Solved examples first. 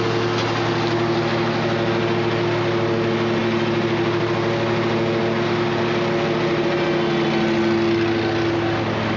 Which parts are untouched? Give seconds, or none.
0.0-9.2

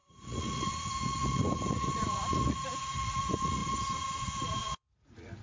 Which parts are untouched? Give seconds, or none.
none

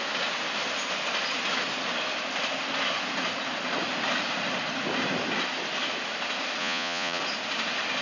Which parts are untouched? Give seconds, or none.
0.0-6.6; 7.2-8.0

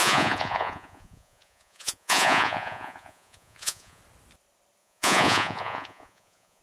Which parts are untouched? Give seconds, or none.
4.0-4.8

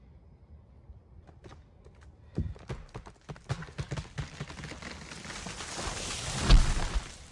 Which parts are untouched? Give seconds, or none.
0.0-7.3

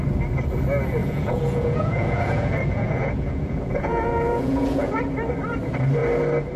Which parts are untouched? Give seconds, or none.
0.0-1.0; 5.0-6.6

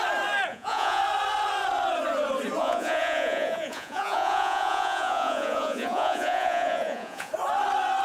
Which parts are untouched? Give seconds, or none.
0.0-0.5; 1.0-2.6; 7.3-8.0